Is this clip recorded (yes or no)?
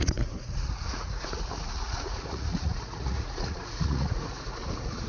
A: no